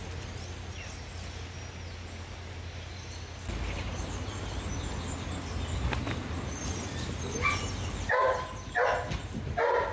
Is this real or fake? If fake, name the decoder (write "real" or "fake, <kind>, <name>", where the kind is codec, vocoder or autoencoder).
real